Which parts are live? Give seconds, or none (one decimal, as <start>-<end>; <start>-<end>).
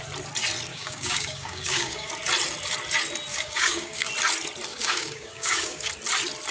0.0-0.7; 2.1-3.3; 4.1-4.7; 5.9-6.5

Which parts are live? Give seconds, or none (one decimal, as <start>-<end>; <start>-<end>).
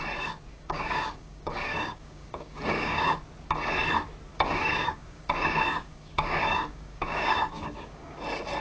0.0-0.5; 3.1-4.3; 8.2-8.6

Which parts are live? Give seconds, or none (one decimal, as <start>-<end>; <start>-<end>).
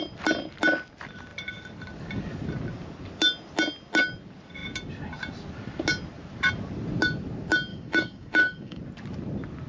0.0-7.7; 8.8-9.7